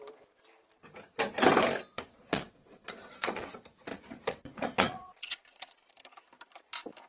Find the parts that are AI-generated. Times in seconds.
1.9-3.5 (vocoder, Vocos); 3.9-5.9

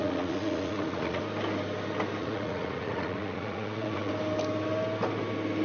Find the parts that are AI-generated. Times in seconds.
0.0-1.2 (vocoder, Vocos); 2.2-4.1